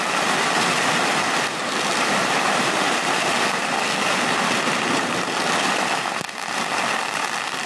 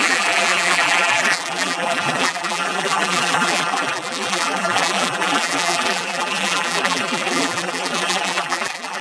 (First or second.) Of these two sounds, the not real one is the second